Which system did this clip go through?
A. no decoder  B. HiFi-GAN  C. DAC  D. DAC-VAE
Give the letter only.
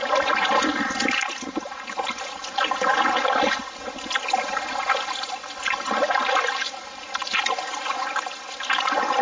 A